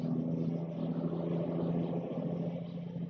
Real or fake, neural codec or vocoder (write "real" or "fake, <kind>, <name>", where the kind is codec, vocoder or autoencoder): real